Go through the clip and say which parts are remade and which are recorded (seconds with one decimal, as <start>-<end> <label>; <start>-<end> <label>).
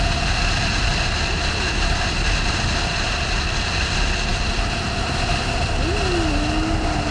0.0-4.3 recorded; 4.3-5.0 remade; 5.0-7.1 recorded